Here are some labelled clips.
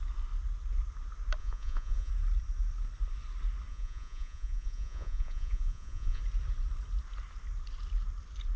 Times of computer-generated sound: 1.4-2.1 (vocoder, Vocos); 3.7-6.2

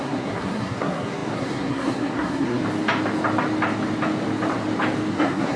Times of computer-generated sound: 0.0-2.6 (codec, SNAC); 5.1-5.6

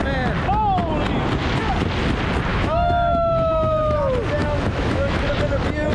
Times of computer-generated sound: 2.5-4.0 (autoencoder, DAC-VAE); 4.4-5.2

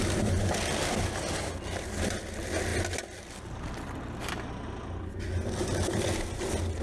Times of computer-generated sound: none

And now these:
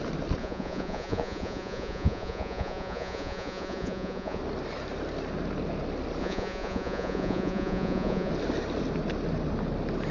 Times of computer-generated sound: 0.4-4.4 (vocoder, Vocos); 6.2-8.3

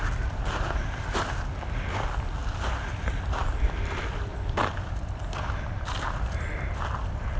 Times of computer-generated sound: none

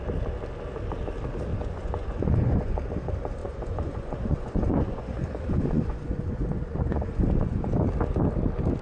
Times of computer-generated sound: 1.5-2.8 (vocoder, Vocos); 3.4-7.7

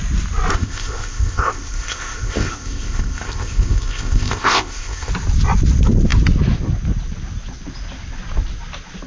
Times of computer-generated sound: 0.5-5.1 (codec, ZipCodec)